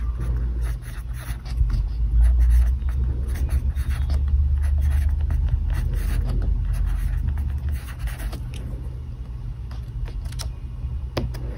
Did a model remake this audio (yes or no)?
no